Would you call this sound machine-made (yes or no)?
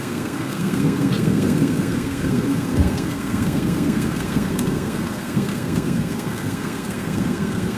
yes